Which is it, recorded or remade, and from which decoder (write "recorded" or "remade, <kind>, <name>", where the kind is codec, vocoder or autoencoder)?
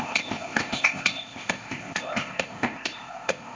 remade, codec, ZipCodec